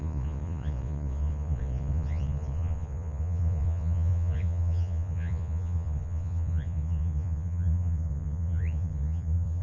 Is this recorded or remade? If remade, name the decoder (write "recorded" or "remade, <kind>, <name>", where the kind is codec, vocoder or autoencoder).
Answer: remade, vocoder, Vocos